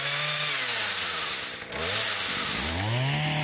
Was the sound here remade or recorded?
recorded